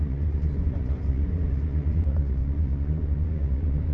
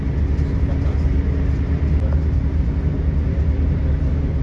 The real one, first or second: second